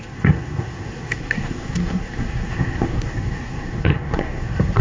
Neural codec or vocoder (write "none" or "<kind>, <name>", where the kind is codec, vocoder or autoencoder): codec, SNAC